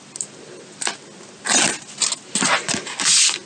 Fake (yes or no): no